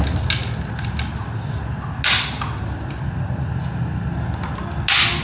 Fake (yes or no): no